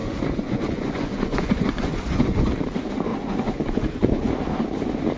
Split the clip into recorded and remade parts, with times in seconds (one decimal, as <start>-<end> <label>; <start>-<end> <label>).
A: 0.0-2.5 remade; 2.5-3.1 recorded; 3.1-4.3 remade; 4.3-5.2 recorded

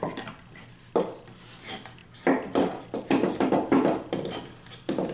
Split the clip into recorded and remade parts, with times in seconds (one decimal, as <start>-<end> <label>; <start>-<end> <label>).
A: 0.0-5.1 recorded